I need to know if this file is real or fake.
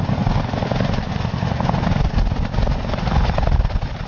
real